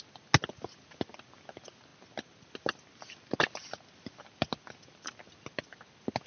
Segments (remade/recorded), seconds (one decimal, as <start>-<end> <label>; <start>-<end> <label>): 0.0-6.3 recorded